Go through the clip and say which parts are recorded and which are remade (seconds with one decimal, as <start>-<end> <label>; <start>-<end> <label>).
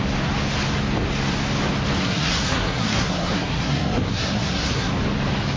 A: 0.0-2.0 recorded; 2.0-4.9 remade; 4.9-5.6 recorded